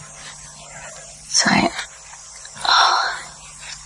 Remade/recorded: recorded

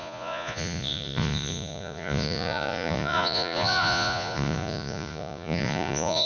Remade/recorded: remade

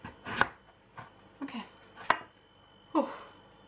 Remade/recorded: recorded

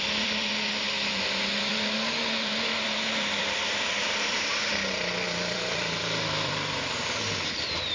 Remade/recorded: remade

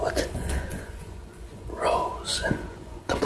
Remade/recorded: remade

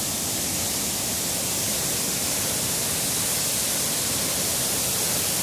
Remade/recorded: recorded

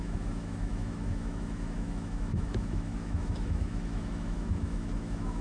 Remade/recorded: remade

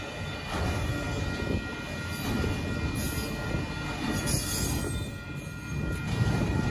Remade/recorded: recorded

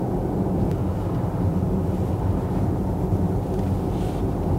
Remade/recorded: recorded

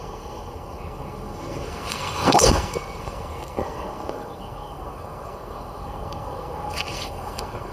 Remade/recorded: remade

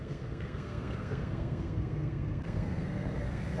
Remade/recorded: remade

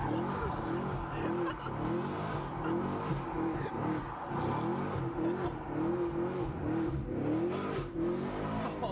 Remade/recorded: recorded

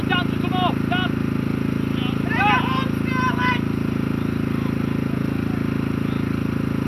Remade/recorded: recorded